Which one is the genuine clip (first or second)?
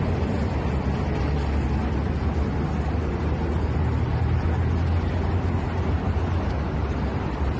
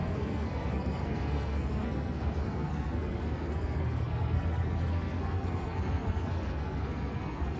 first